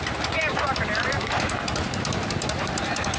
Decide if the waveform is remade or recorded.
remade